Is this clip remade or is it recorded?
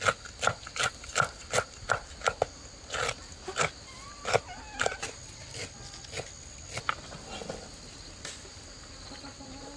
recorded